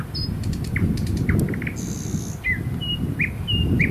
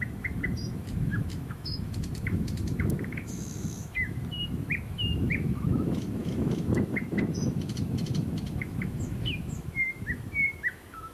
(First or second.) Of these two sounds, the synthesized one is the second